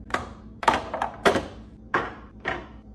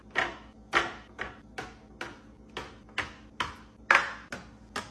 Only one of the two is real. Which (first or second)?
second